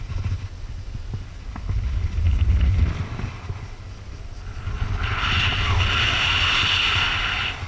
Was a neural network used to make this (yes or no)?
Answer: no